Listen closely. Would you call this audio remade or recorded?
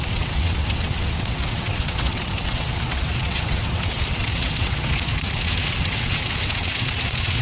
remade